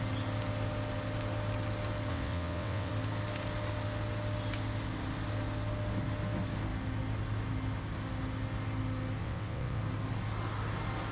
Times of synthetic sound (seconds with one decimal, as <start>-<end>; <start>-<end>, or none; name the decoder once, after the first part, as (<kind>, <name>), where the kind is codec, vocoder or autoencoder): 2.1-2.9 (vocoder, WaveNeXt); 9.2-9.8